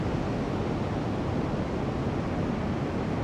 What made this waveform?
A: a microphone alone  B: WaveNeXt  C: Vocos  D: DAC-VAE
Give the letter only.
A